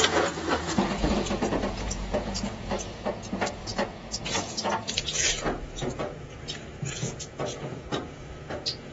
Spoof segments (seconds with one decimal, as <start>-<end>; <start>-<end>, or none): 0.0-8.9